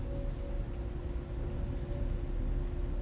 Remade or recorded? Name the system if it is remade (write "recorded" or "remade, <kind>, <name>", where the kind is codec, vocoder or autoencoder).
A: recorded